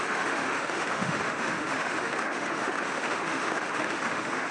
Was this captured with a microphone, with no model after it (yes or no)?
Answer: no